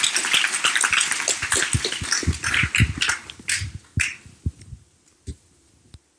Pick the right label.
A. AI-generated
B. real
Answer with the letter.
B